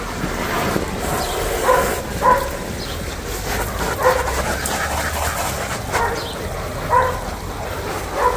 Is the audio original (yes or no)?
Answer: yes